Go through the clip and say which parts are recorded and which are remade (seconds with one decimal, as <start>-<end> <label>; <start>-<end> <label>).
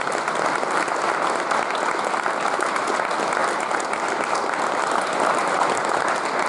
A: 0.0-6.5 recorded